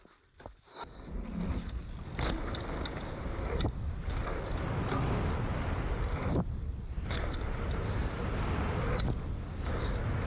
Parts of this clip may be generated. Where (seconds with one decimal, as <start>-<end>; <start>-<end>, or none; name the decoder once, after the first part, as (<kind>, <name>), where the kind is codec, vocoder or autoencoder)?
4.2-7.4 (vocoder, BigVGAN v2); 8.0-9.5